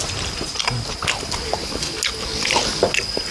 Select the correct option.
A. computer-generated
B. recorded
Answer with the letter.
B